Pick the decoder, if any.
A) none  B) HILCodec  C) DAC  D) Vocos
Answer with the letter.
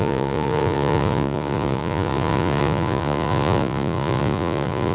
D